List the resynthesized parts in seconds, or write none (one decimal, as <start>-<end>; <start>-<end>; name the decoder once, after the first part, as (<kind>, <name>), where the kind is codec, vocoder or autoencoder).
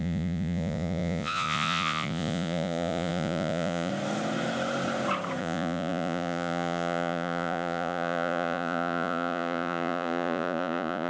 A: 0.0-3.9 (vocoder, Vocos); 5.4-11.1